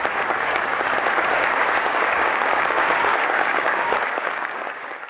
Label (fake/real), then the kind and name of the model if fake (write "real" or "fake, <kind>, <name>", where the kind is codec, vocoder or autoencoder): fake, codec, DAC